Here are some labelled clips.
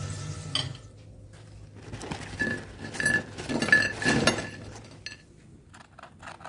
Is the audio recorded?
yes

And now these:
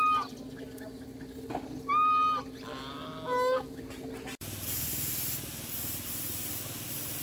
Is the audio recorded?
yes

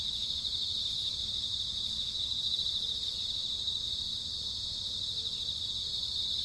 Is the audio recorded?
yes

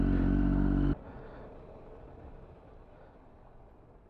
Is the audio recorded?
yes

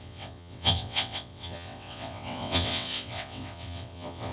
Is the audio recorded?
no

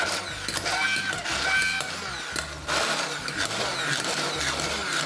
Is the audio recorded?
yes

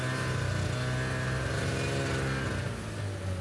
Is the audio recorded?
yes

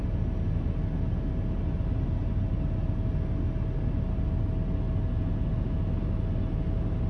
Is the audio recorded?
yes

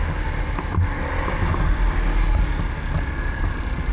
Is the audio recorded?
yes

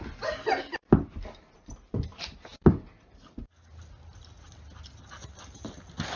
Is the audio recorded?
yes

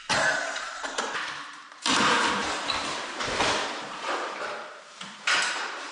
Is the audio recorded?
no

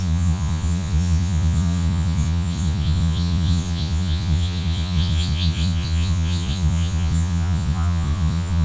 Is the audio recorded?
no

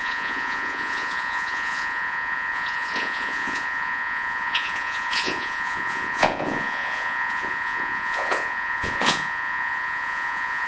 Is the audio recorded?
no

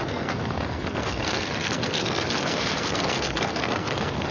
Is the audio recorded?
no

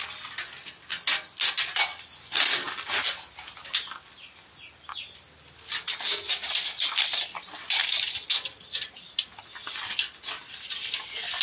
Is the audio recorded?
yes